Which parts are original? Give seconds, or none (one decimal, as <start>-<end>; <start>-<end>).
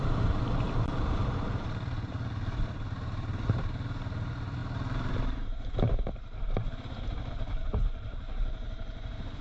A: none